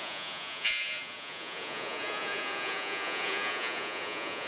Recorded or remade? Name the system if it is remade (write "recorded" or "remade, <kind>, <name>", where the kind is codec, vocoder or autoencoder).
remade, vocoder, Vocos